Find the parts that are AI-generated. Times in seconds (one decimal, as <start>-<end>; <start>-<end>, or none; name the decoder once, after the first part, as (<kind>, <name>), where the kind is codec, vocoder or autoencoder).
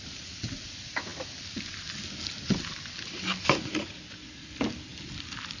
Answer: none